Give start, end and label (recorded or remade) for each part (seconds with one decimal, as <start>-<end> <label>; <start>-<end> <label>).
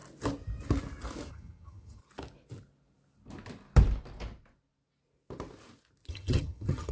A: 0.0-1.3 recorded; 1.3-2.0 remade; 2.0-6.1 recorded; 6.1-6.9 remade